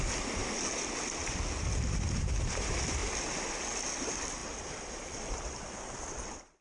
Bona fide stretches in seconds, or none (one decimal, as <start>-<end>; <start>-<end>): 0.4-1.7; 3.0-4.0